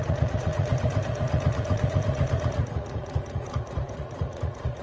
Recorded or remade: remade